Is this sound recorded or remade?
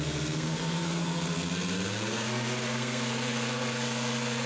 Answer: remade